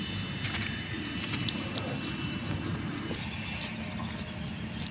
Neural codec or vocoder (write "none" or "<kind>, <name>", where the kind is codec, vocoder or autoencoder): none